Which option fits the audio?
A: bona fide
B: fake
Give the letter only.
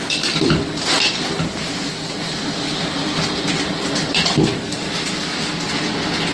A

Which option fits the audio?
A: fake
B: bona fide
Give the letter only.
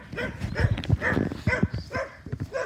B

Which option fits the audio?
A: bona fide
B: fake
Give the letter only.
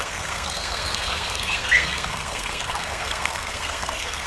B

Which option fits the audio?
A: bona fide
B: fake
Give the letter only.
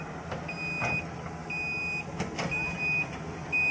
A